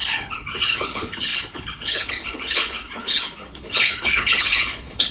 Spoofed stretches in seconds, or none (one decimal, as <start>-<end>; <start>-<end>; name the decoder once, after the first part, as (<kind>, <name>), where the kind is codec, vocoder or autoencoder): 0.0-5.1 (codec, HILCodec)